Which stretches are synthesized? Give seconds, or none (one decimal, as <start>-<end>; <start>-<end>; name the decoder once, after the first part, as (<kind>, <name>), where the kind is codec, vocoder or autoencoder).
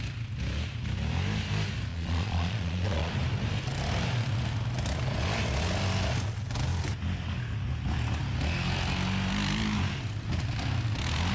1.9-3.1 (vocoder, Vocos)